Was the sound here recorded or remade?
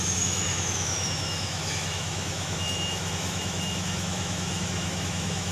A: remade